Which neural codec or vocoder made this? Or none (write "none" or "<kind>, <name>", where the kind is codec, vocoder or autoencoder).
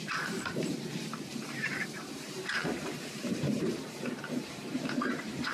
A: vocoder, BigVGAN v2